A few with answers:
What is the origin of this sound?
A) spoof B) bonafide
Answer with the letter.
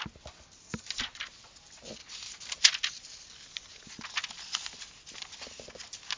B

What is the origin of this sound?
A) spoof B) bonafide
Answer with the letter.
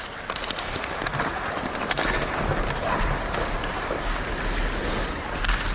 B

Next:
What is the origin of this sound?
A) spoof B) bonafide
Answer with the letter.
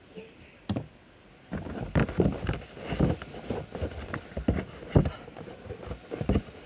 B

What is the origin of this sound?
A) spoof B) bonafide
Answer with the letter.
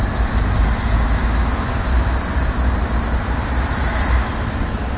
B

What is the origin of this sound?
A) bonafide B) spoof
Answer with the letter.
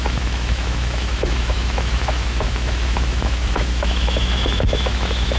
B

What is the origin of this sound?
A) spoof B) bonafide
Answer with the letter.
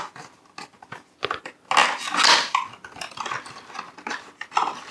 B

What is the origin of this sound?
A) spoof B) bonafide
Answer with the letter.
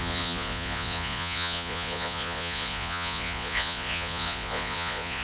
A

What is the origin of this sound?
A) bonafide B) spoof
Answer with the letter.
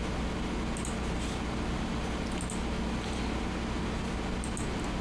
A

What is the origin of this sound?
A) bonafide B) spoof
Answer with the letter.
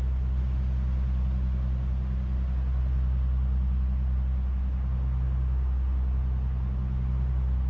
A